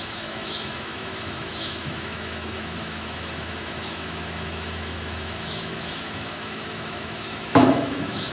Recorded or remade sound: remade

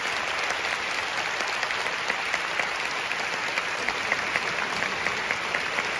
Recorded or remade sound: recorded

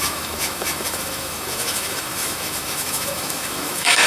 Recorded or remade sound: remade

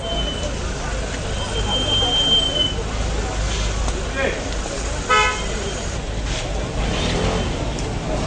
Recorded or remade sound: recorded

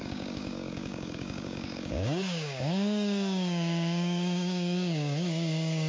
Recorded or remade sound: remade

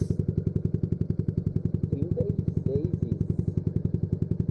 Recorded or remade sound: recorded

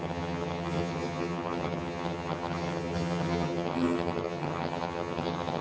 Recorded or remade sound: remade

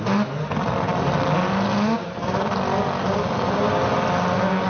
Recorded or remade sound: recorded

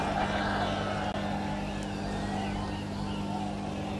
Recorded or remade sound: recorded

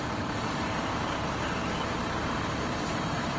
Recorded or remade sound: remade